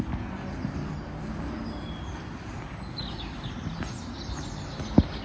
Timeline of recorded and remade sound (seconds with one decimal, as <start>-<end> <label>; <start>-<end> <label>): 0.0-5.2 recorded